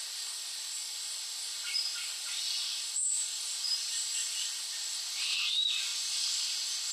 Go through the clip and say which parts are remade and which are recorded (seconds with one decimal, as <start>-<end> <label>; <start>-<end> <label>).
0.0-6.9 recorded